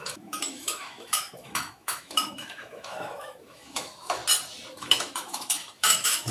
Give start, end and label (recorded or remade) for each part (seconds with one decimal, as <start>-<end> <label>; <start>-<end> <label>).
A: 0.0-4.2 remade; 4.2-4.7 recorded; 4.7-6.3 remade